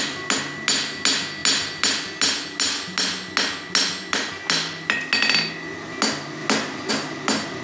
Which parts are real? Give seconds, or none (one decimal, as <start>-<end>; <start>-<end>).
0.0-7.6

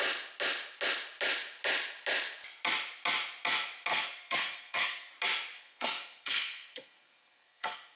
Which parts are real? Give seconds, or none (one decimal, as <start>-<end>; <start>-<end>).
0.0-3.9; 5.1-5.6

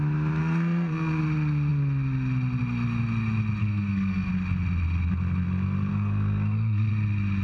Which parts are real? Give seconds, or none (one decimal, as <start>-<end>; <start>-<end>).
0.0-0.4; 1.2-3.6; 4.3-5.9; 6.9-7.4

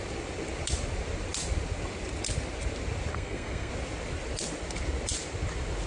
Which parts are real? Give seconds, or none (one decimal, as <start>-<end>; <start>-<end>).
0.0-3.1; 3.7-5.9

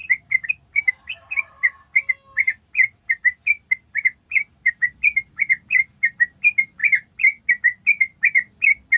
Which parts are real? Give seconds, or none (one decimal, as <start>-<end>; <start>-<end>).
0.0-9.0

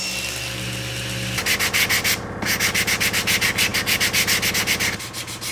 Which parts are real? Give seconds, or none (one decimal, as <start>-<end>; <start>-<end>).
0.0-5.5